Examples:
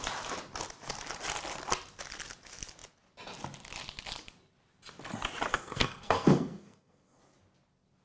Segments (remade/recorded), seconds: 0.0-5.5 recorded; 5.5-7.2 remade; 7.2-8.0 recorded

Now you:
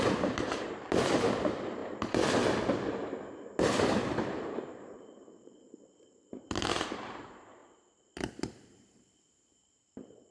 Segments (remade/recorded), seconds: 0.0-1.8 remade; 1.8-3.6 recorded; 3.6-7.6 remade; 7.6-8.6 recorded; 8.6-10.3 remade

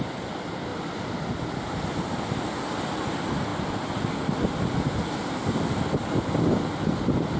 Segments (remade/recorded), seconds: 0.0-7.4 recorded

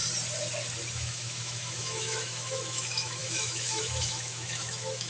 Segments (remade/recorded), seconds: 0.0-0.9 recorded; 0.9-5.1 remade

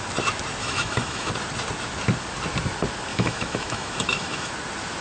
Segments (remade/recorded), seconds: 0.0-0.6 recorded; 0.6-1.3 remade; 1.3-3.1 recorded; 3.1-4.5 remade; 4.5-5.0 recorded

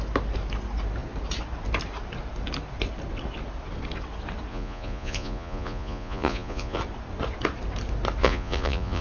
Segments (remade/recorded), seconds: 0.0-4.5 recorded; 4.5-6.8 remade; 6.8-8.2 recorded; 8.2-9.0 remade